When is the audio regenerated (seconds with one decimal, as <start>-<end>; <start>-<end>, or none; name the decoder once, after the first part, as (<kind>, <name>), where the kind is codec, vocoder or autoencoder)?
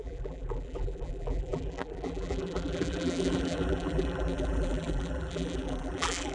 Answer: 0.0-6.3 (vocoder, BigVGAN v2)